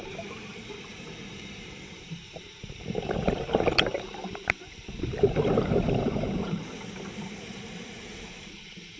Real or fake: fake